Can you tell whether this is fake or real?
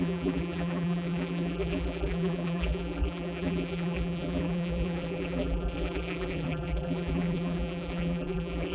fake